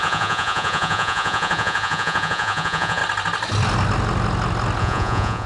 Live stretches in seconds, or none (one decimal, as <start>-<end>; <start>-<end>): 3.0-4.8